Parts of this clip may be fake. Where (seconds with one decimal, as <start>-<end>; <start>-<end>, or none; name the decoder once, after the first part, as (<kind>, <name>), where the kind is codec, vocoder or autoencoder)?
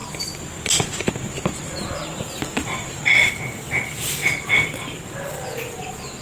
0.0-1.1 (vocoder, BigVGAN v2)